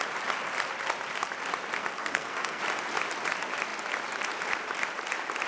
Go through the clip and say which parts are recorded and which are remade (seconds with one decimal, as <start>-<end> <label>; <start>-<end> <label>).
0.0-1.8 recorded; 1.8-2.6 remade; 2.6-5.5 recorded